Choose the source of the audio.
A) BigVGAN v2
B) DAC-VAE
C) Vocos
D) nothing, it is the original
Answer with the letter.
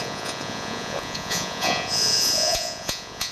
C